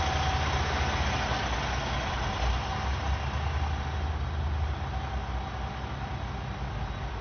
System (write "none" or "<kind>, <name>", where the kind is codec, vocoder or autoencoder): none